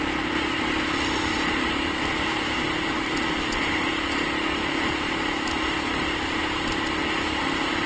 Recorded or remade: recorded